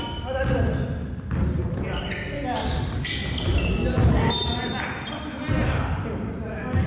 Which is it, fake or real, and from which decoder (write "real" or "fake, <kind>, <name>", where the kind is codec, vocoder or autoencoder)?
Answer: real